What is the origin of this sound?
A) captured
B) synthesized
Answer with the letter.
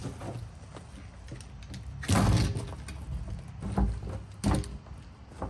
A